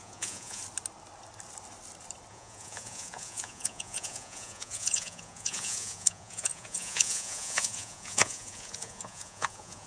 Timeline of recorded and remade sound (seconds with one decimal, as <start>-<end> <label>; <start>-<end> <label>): 0.0-0.6 remade; 0.6-2.3 recorded; 2.3-9.9 remade